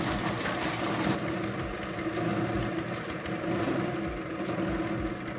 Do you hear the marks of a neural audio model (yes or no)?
no